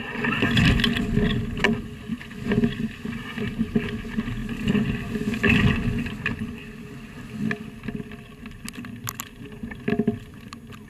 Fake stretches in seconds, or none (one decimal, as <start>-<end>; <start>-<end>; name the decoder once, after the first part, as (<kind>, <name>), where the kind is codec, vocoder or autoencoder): none